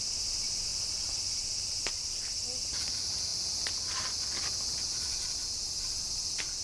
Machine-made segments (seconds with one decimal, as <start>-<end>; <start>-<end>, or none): 0.7-2.1